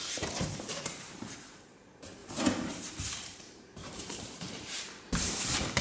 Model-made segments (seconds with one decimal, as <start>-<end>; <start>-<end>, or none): 0.0-5.8